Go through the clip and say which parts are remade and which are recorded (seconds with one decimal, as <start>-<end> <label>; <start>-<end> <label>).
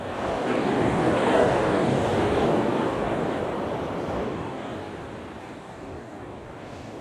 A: 0.0-3.4 remade; 3.4-4.1 recorded; 4.1-4.9 remade; 4.9-5.4 recorded; 5.4-7.0 remade